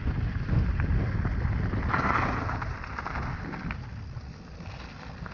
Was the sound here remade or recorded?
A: recorded